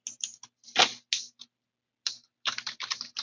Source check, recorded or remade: recorded